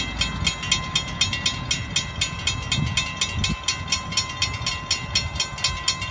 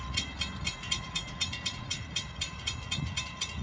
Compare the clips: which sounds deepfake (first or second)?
second